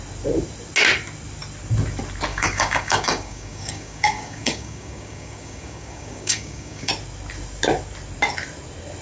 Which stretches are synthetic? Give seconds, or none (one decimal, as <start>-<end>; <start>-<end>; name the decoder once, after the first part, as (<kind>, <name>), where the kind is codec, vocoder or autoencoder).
2.3-6.9 (codec, DAC)